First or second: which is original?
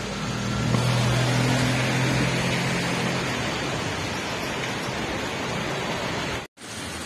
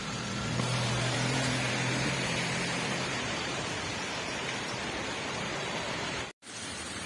first